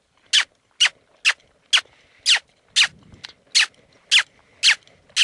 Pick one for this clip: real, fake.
real